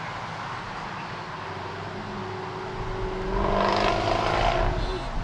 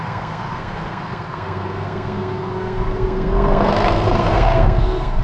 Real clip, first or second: first